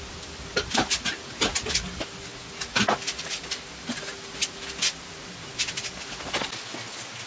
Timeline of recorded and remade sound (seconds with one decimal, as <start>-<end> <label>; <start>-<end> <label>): 0.0-7.3 recorded